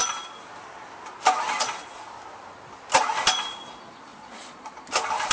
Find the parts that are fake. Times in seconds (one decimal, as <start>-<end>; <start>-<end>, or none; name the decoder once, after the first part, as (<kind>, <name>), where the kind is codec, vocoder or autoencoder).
4.1-4.7 (vocoder, Vocos)

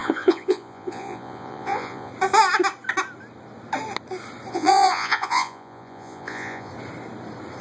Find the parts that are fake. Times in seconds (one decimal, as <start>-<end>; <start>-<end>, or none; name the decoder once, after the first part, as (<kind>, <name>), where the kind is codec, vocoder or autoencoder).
0.0-2.1 (vocoder, Vocos); 4.5-6.7

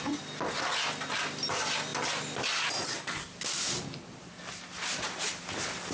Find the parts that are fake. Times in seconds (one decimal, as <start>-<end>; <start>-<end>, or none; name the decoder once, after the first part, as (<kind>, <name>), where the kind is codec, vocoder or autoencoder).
none

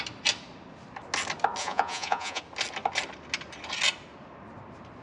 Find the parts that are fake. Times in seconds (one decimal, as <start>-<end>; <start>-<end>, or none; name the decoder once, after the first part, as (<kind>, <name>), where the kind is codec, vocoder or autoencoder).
1.6-2.4 (vocoder, Vocos)

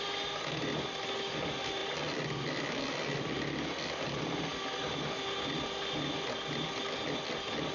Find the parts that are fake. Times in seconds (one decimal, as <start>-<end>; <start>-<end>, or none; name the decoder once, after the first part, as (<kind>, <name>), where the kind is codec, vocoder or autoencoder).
none

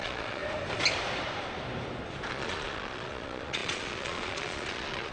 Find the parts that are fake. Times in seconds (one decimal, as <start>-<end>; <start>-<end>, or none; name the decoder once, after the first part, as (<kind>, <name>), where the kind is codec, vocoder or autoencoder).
0.0-0.4 (vocoder, Vocos); 2.3-5.1

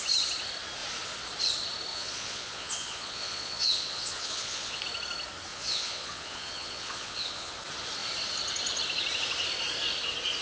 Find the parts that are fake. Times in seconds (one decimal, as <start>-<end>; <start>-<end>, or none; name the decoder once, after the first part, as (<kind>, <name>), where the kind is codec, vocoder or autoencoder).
1.9-4.8 (vocoder, Vocos); 5.5-7.5

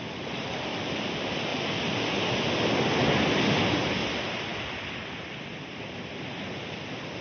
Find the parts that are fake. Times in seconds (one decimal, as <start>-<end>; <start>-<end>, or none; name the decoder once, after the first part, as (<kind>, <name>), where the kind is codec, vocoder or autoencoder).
none